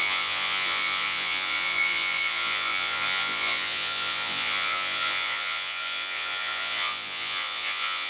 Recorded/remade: remade